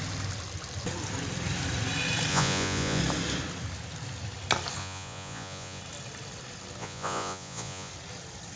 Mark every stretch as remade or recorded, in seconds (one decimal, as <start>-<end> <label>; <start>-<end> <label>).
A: 0.0-2.3 recorded; 2.3-3.0 remade; 3.0-4.8 recorded; 4.8-5.8 remade; 5.8-6.8 recorded; 6.8-7.9 remade; 7.9-8.6 recorded